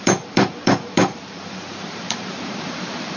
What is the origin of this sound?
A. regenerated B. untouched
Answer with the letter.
A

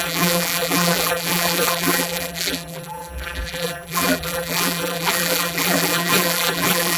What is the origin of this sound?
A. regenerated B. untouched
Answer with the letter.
A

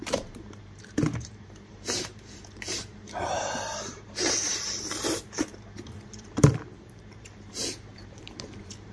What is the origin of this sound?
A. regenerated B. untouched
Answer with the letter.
A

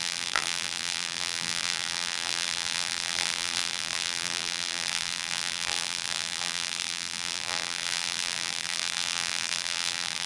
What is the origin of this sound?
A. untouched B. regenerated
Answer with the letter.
B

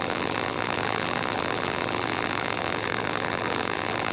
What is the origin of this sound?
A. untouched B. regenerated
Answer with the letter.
B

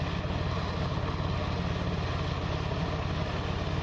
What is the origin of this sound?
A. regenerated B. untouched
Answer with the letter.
B